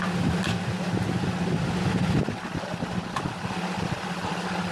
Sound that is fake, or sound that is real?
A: fake